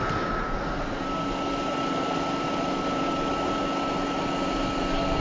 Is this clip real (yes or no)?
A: yes